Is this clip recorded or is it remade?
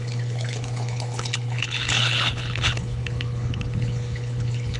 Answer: remade